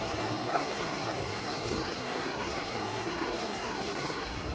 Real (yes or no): no